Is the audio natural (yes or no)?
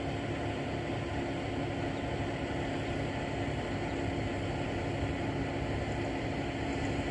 yes